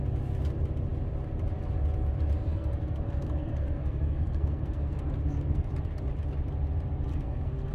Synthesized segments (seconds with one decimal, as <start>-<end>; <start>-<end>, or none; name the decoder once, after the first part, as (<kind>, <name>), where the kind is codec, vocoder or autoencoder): 2.5-5.7 (codec, SNAC); 7.1-7.7